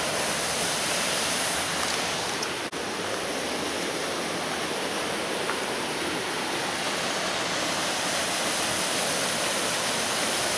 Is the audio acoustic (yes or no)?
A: yes